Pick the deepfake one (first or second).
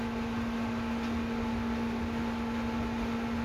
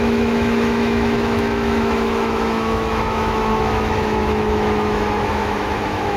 second